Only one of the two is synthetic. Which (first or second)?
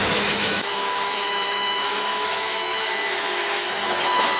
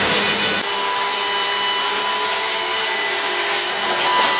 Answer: first